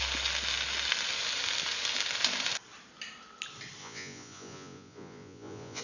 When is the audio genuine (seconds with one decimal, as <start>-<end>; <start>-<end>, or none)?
0.0-3.8